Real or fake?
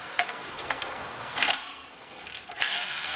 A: fake